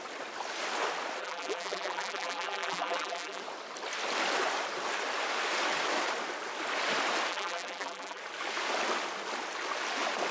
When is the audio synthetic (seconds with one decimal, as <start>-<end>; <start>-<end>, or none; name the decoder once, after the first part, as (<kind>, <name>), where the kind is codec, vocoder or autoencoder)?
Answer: 1.2-3.4 (vocoder, BigVGAN v2); 7.3-8.2